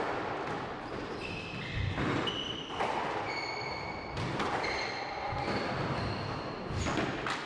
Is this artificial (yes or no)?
no